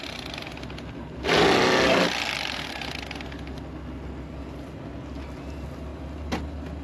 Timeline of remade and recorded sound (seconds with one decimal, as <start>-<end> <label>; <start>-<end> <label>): 0.0-6.8 recorded